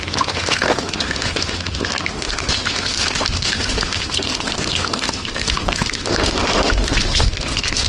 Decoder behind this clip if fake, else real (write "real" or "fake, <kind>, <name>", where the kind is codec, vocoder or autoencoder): fake, autoencoder, DAC-VAE